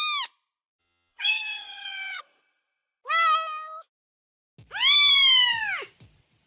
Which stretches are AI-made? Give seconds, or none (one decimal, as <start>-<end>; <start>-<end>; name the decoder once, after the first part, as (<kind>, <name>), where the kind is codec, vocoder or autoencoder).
0.8-2.2 (vocoder, HiFi-GAN)